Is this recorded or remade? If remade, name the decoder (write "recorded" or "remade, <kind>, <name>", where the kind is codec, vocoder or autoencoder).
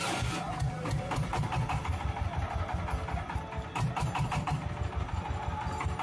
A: recorded